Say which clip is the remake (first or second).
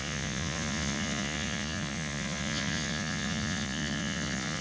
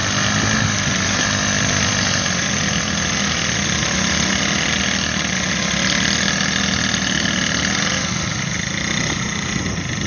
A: first